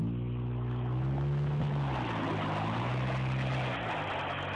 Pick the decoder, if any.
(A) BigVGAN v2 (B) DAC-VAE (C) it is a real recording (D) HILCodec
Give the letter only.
C